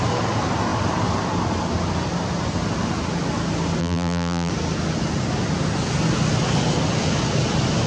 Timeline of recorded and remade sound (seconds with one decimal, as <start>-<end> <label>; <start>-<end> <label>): 0.0-3.8 recorded; 3.8-4.5 remade; 4.5-7.9 recorded